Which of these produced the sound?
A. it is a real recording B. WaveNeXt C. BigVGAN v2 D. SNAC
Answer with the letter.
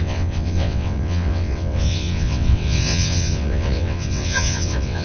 B